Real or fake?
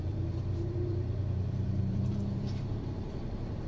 fake